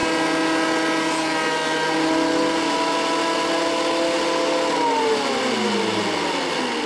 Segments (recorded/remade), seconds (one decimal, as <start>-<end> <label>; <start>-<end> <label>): 0.0-6.9 recorded